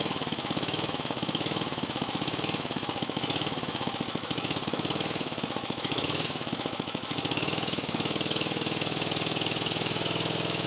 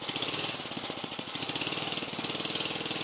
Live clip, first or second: second